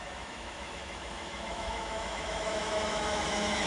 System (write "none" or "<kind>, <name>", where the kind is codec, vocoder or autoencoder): autoencoder, DAC-VAE